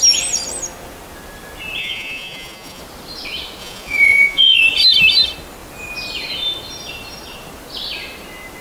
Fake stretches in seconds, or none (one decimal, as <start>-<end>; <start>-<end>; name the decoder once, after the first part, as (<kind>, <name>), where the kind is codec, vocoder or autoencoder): 1.8-2.8 (vocoder, Vocos); 3.6-4.6